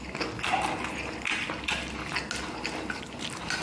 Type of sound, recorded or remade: recorded